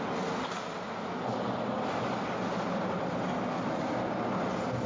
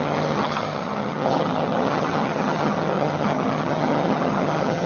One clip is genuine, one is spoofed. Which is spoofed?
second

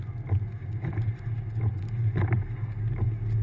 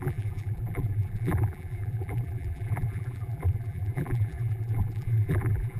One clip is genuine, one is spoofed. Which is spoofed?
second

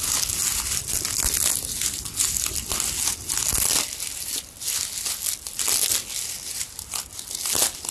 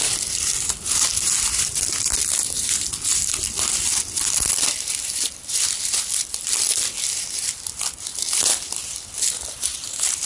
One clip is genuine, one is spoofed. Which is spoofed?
second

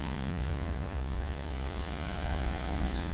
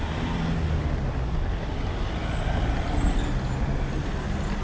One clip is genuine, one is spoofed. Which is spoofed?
first